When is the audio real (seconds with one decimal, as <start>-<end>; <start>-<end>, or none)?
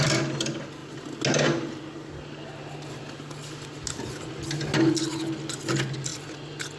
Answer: 0.0-6.8